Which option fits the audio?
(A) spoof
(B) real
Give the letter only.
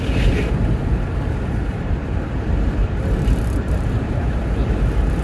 A